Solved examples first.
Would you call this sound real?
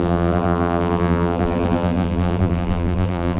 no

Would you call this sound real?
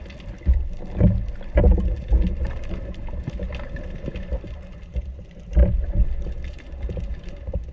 yes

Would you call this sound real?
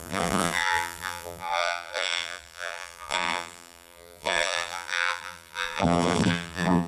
no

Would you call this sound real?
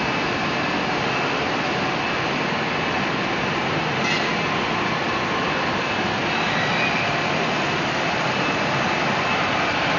yes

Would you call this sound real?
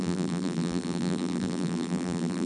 no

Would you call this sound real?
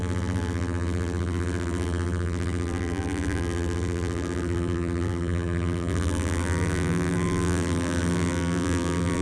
no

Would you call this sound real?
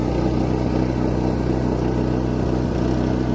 yes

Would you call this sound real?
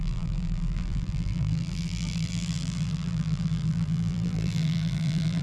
no